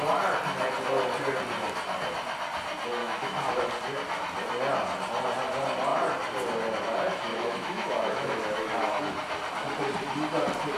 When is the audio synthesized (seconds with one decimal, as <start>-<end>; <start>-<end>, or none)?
3.0-3.6; 7.3-9.0